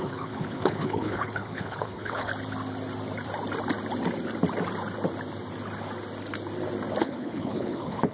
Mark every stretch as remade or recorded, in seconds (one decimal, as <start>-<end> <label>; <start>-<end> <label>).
0.0-2.3 remade; 2.3-7.0 recorded; 7.0-8.1 remade